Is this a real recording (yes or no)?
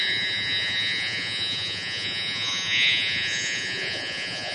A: no